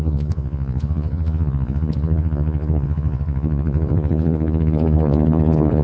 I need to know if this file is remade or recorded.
remade